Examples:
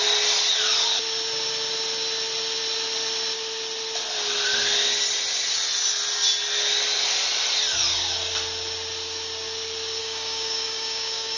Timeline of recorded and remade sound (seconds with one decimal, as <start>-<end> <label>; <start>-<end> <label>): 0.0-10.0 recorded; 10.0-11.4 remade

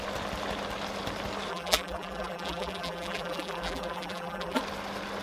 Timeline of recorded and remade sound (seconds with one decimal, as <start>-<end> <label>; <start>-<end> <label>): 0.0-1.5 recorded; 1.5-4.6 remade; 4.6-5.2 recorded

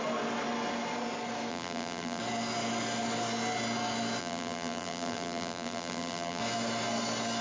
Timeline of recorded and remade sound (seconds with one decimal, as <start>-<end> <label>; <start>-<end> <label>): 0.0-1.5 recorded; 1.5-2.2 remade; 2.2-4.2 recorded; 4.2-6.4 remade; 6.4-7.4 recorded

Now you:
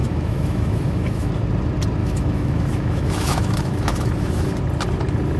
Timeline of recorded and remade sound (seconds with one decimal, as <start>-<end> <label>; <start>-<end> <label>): 0.0-1.3 remade; 1.3-2.0 recorded; 2.0-4.5 remade; 4.5-5.4 recorded

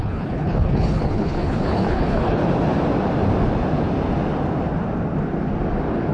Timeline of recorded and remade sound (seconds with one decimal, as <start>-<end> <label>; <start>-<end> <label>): 0.0-2.4 remade; 2.4-6.1 recorded